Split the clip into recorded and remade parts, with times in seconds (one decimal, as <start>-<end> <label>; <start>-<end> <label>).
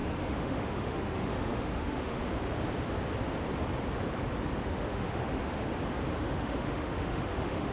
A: 0.0-2.2 remade; 2.2-4.6 recorded; 4.6-5.7 remade; 5.7-6.2 recorded; 6.2-7.7 remade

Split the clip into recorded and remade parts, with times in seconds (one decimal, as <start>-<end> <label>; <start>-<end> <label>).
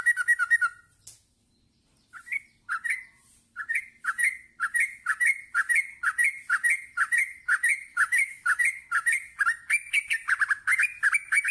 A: 0.0-7.9 recorded; 7.9-8.6 remade; 8.6-11.5 recorded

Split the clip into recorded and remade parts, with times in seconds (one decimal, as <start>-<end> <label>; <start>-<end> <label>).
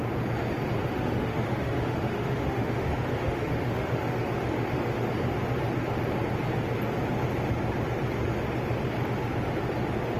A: 0.0-0.8 recorded; 0.8-5.1 remade; 5.1-10.2 recorded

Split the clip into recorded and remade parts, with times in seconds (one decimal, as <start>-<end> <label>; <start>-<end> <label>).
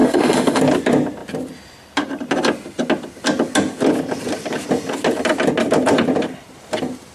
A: 0.0-0.6 remade; 0.6-7.1 recorded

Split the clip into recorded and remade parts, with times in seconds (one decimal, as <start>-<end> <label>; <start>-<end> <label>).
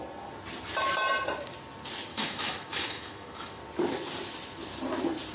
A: 0.0-2.1 recorded; 2.1-3.6 remade; 3.6-5.3 recorded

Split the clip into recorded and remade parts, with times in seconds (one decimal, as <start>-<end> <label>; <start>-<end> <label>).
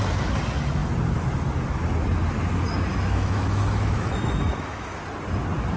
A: 0.0-2.9 recorded; 2.9-5.0 remade; 5.0-5.8 recorded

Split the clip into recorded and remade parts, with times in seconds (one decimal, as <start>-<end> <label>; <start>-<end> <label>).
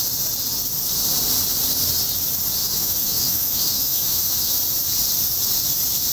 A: 0.0-2.6 recorded; 2.6-4.6 remade; 4.6-6.1 recorded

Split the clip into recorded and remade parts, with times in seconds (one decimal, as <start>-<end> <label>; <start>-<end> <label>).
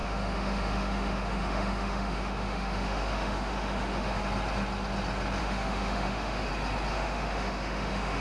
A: 0.0-4.2 remade; 4.2-5.4 recorded; 5.4-6.5 remade; 6.5-6.9 recorded; 6.9-8.2 remade